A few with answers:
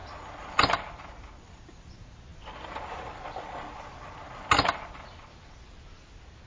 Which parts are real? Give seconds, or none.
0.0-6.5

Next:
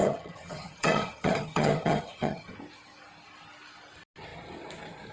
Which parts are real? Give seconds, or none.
2.5-5.1

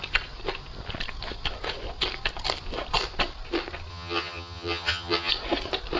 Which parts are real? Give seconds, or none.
0.0-3.9; 5.3-6.0

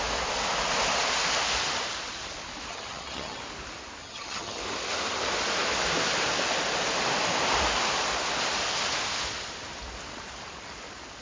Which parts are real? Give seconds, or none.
0.0-2.7; 3.4-4.0; 4.6-11.2

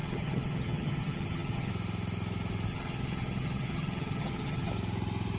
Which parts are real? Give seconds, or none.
1.7-2.7; 4.7-5.4